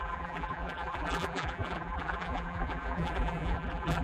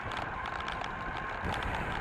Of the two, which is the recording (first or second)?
second